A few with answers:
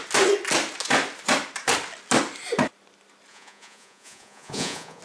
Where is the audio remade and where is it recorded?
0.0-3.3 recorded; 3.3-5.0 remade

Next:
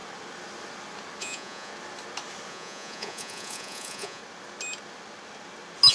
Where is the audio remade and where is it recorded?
0.0-1.2 recorded; 1.2-1.7 remade; 1.7-2.5 recorded; 2.5-4.2 remade; 4.2-5.9 recorded

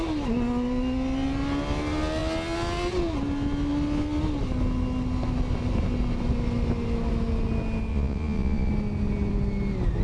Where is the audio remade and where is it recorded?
0.0-7.9 recorded; 7.9-8.7 remade; 8.7-10.0 recorded